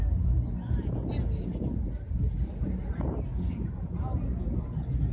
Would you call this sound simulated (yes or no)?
no